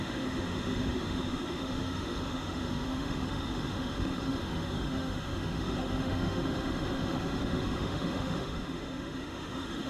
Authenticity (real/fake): fake